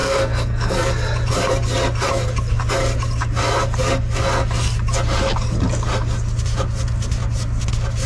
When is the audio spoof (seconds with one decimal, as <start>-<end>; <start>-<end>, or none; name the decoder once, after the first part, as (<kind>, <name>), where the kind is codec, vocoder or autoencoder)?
0.0-0.9 (codec, SNAC)